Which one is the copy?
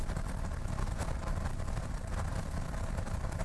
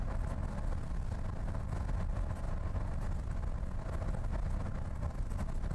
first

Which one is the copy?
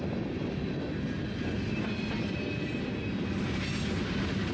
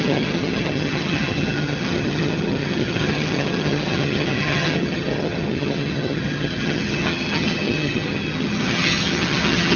second